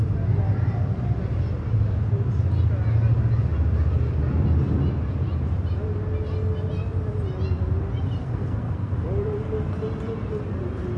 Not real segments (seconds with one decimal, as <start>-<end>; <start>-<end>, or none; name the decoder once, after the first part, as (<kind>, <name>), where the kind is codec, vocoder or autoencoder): 8.2-8.9 (codec, SNAC)